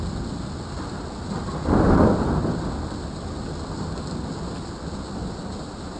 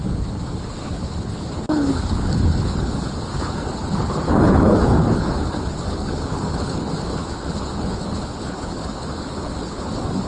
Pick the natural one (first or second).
first